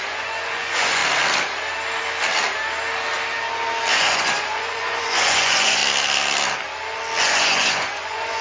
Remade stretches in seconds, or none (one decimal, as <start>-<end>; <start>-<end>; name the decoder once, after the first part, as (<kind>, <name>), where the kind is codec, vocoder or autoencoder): 0.0-1.0 (vocoder, Vocos); 3.9-5.8; 7.2-8.4

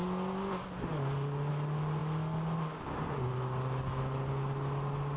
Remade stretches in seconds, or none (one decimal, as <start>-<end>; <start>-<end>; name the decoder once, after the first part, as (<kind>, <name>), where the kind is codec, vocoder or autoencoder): none

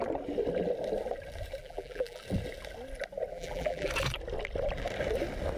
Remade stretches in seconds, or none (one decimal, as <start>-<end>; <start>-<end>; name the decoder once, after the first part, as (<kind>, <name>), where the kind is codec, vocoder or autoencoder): 1.6-2.2 (vocoder, BigVGAN v2); 3.3-3.9

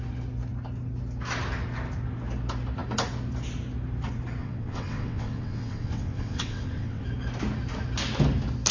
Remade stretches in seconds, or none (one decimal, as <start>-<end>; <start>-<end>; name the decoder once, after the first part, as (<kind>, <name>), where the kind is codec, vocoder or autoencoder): 4.4-7.0 (vocoder, WaveNeXt)

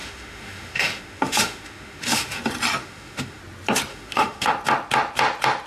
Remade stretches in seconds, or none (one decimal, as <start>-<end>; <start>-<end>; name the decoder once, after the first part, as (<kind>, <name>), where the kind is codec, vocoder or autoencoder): 0.0-2.4 (autoencoder, DAC-VAE); 2.8-3.4; 3.9-4.5

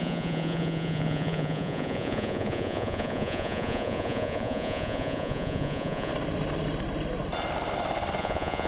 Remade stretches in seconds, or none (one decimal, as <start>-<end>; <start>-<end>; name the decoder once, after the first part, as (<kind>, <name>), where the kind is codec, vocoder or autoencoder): 0.0-6.1 (vocoder, Vocos); 8.2-8.7